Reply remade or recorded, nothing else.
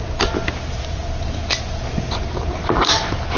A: recorded